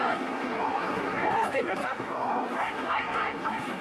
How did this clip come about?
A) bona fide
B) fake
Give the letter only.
B